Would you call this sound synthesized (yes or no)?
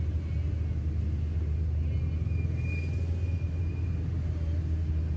no